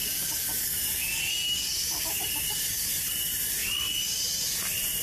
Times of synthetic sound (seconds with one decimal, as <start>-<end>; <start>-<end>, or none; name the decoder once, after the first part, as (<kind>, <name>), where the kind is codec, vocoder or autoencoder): 0.0-3.0 (codec, DAC); 3.6-4.2